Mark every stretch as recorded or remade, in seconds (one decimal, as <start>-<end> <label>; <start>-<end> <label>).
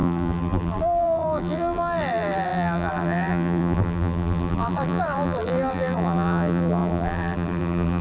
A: 0.0-8.0 remade